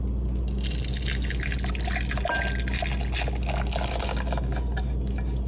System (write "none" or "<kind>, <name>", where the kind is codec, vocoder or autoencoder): none